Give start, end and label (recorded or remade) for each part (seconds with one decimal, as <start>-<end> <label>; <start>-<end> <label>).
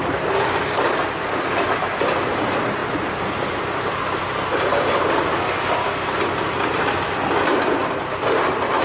0.0-8.8 recorded